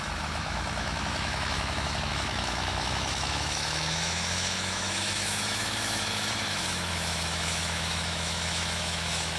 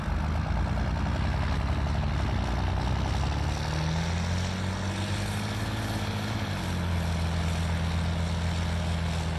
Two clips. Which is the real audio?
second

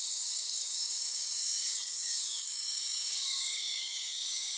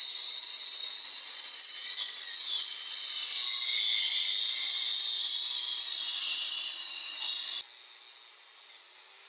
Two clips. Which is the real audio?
second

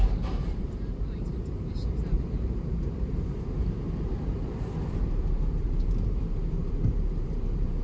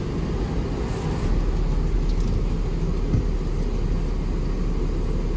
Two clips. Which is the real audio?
second